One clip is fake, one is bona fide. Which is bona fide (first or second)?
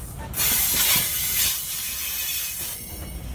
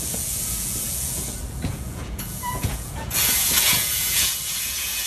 first